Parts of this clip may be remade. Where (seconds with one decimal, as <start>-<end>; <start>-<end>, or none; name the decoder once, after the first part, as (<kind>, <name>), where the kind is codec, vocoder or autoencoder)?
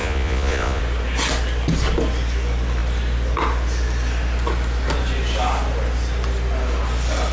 0.0-0.8 (vocoder, Vocos)